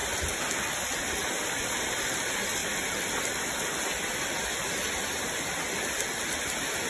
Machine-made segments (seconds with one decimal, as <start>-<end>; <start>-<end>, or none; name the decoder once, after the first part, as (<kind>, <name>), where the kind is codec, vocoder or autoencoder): none